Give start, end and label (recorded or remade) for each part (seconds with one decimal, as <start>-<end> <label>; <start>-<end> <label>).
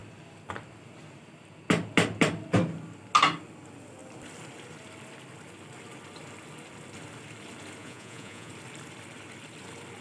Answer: 0.0-7.8 recorded; 7.8-8.5 remade; 8.5-10.0 recorded